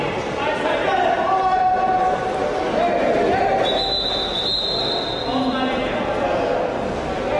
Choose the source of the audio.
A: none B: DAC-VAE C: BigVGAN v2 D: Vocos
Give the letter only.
A